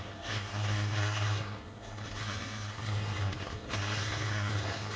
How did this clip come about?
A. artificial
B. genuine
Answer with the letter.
A